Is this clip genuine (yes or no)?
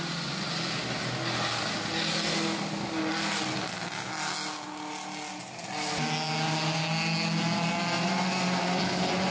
yes